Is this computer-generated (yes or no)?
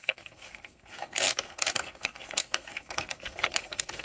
yes